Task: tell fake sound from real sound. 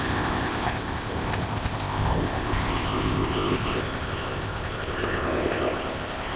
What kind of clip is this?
fake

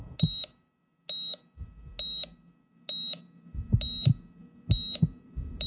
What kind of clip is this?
real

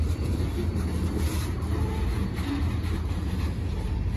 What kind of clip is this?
real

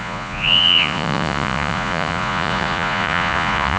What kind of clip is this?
fake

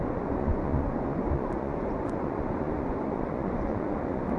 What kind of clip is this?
fake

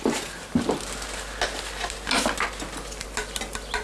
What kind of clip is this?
real